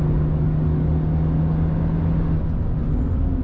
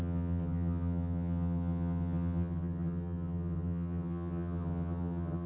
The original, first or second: first